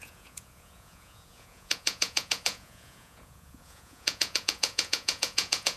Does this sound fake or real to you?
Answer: fake